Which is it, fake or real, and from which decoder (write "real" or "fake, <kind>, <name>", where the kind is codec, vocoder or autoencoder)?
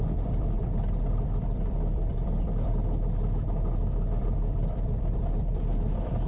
fake, vocoder, BigVGAN v2